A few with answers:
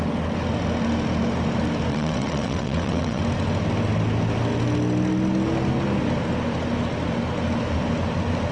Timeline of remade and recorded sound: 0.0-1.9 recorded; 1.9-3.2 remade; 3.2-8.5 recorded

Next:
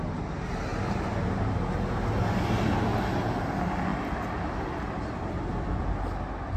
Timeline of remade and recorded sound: 0.0-6.6 recorded